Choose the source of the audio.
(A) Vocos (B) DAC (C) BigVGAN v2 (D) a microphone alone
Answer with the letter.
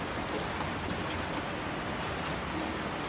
D